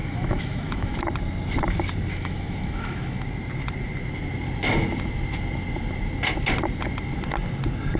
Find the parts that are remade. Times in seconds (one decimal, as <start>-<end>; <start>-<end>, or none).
0.0-1.0; 2.1-3.2